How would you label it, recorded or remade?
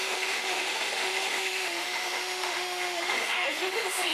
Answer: remade